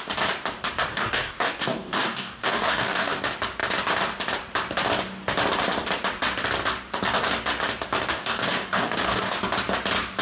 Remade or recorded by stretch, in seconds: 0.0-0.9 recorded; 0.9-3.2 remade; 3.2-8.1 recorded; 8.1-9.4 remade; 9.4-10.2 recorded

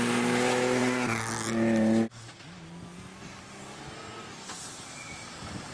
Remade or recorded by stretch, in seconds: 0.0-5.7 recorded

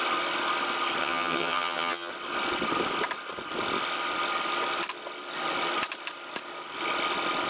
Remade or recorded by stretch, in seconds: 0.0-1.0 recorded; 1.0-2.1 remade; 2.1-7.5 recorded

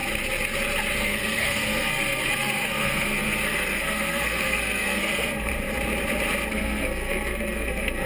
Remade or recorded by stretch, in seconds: 0.0-1.0 recorded; 1.0-5.5 remade; 5.5-6.5 recorded; 6.5-8.1 remade

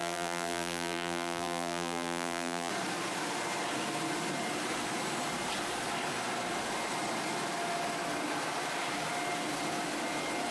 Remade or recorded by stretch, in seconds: 0.0-2.7 remade; 2.7-10.5 recorded

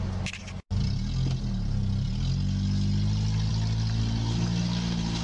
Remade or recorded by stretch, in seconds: 0.0-5.2 recorded

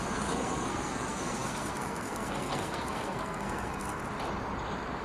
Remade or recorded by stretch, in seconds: 0.0-4.0 remade; 4.0-5.0 recorded